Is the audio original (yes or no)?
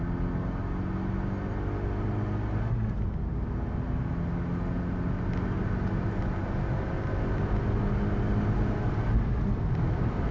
yes